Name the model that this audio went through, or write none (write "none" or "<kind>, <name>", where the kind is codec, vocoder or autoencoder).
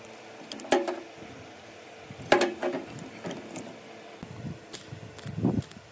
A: none